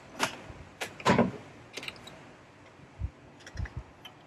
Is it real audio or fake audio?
real